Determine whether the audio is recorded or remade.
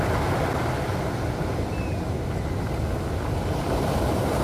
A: recorded